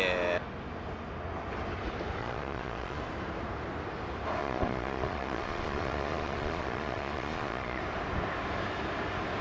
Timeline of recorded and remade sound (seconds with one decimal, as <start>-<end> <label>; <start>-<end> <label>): 0.0-2.2 recorded; 2.2-3.0 remade; 3.0-4.4 recorded; 4.4-7.8 remade; 7.8-9.4 recorded